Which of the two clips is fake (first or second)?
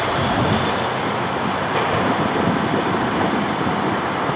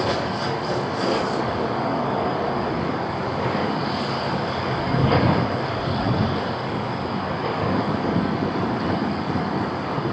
second